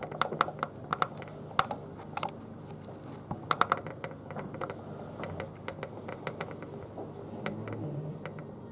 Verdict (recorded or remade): recorded